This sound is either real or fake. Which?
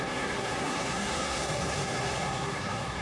fake